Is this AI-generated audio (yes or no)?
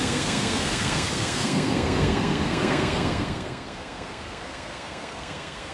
yes